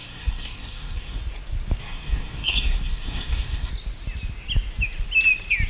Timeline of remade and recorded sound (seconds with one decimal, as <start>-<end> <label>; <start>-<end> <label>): 0.0-1.2 remade; 1.2-1.8 recorded; 1.8-3.7 remade; 3.7-5.7 recorded